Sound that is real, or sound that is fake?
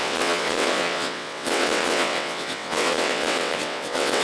fake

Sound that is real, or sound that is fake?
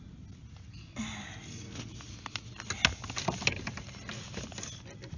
real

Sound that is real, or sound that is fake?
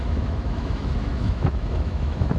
fake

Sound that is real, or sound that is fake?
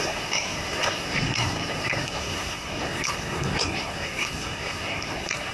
fake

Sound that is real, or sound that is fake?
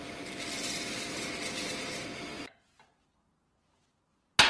real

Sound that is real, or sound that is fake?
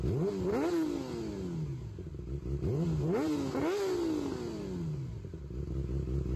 real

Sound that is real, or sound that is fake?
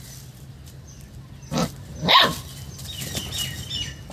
real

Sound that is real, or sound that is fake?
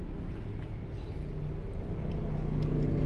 real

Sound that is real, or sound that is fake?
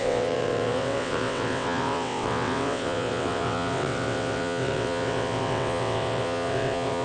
fake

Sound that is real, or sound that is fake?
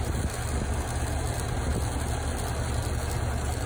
real